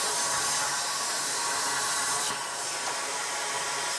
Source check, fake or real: real